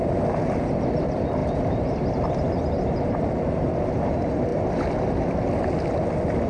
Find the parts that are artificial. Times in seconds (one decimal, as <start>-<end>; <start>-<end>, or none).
none

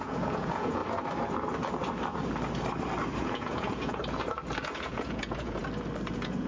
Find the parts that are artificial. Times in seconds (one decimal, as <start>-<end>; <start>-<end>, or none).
0.0-0.8; 3.2-4.0; 4.6-5.6; 6.1-6.5